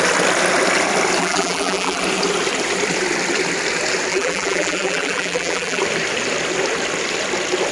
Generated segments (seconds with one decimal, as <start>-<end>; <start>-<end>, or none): 1.2-2.0; 4.1-5.8